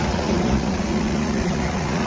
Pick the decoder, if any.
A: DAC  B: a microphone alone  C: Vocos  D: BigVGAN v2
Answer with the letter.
C